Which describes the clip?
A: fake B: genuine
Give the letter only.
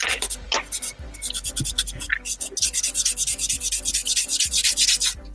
B